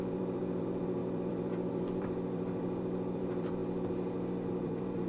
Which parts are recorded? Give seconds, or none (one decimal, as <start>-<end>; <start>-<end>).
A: 3.6-4.5